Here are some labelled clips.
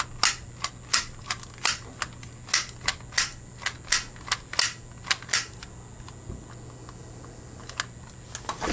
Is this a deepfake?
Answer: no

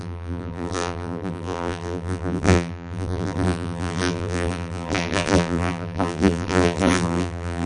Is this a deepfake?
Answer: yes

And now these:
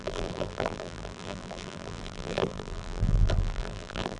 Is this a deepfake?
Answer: yes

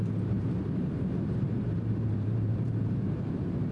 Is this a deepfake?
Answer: yes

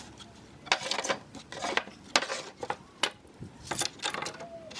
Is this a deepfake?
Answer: no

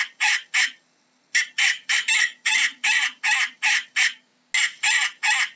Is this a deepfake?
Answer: no